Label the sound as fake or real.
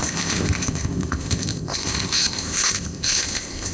fake